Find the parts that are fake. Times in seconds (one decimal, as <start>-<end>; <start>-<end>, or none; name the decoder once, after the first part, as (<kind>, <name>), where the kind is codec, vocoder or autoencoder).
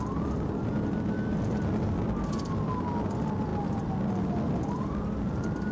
none